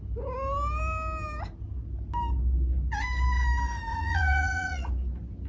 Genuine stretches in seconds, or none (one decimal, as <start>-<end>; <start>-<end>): 0.0-3.9; 4.9-5.5